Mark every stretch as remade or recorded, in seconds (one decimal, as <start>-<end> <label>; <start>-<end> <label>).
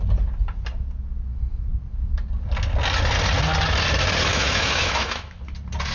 0.0-4.3 recorded; 4.3-5.4 remade; 5.4-5.9 recorded